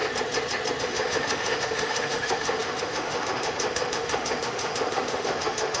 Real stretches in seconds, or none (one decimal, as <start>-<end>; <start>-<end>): 0.0-0.8